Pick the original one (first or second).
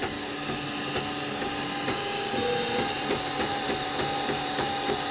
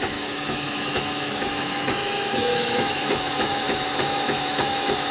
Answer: first